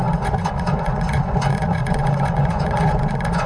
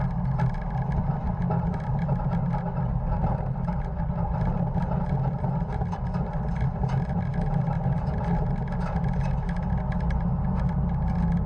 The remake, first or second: first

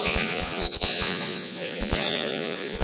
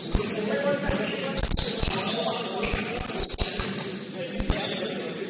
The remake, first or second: first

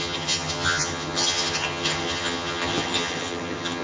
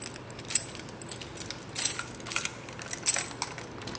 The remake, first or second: first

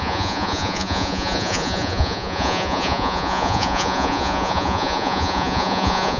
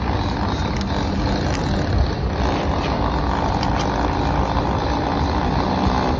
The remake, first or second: first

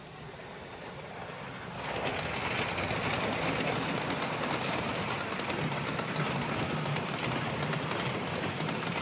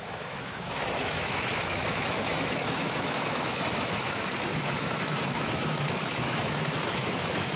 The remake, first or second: second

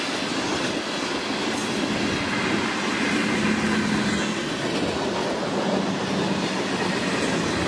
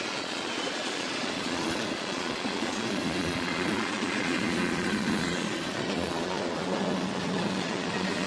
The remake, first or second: second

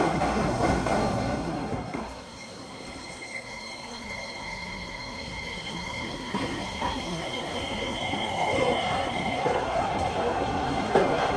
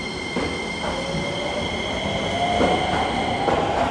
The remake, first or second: first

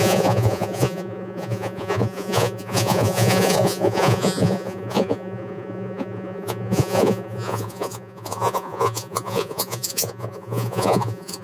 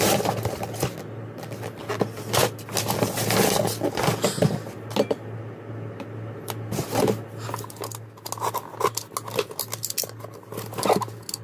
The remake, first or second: first